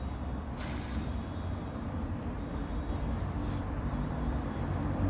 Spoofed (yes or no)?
yes